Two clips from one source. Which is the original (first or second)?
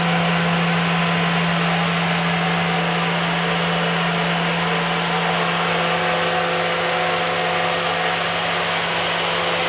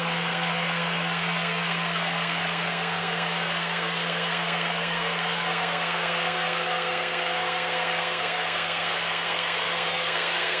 first